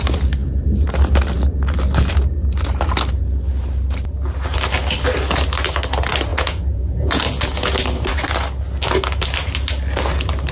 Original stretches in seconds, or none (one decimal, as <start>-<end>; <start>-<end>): 0.0-6.3; 7.2-10.5